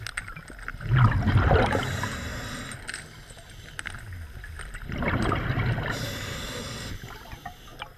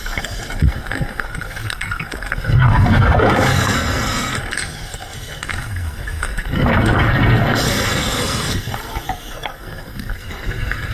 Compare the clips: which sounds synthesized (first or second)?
second